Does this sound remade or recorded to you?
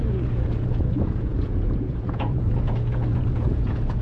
remade